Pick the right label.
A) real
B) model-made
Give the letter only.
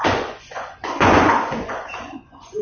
B